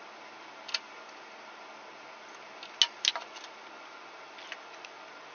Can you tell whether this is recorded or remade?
recorded